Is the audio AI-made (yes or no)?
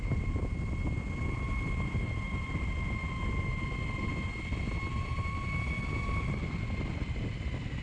no